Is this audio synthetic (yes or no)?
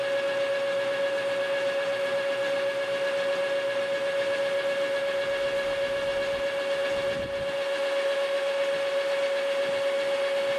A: no